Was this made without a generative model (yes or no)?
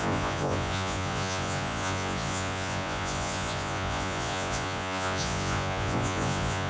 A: no